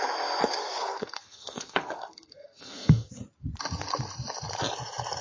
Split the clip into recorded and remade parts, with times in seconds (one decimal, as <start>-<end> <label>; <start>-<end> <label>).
0.0-0.6 recorded; 0.6-3.1 remade; 3.1-5.2 recorded